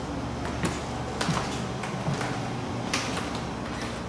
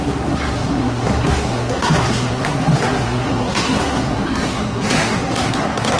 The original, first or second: first